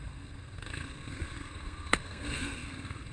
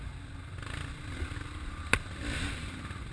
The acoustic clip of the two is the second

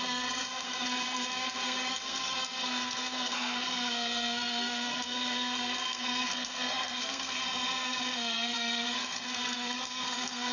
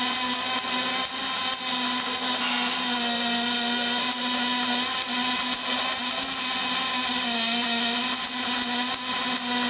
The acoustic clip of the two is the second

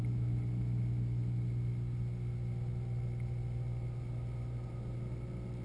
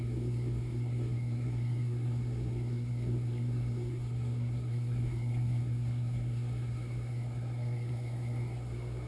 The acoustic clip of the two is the first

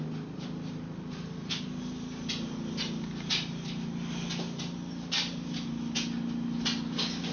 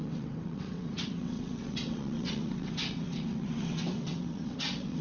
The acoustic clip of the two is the first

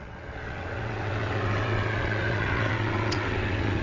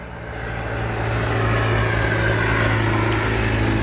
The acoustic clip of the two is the second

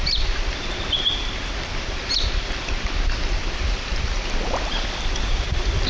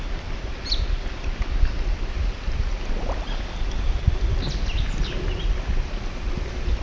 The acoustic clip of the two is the second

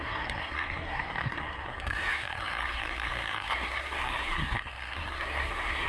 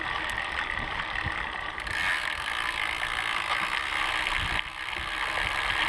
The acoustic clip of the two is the second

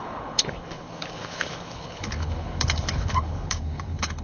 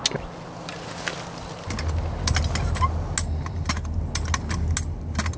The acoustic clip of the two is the second